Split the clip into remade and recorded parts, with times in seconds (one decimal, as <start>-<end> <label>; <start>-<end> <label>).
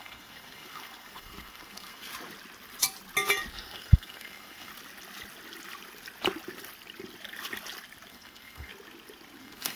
0.0-2.1 remade; 2.1-3.5 recorded; 3.5-4.7 remade; 4.7-8.1 recorded; 8.1-8.7 remade; 8.7-9.4 recorded; 9.4-9.8 remade